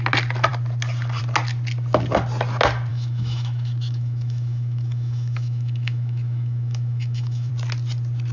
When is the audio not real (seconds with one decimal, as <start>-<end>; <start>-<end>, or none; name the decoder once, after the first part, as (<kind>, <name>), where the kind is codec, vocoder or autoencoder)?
2.9-7.5 (autoencoder, DAC-VAE)